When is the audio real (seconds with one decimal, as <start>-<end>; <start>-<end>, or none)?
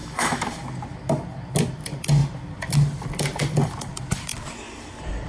0.5-5.3